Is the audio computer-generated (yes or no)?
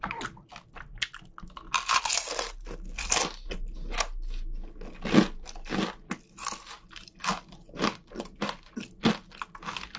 no